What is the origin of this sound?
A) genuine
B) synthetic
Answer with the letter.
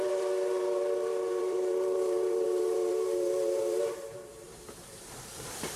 B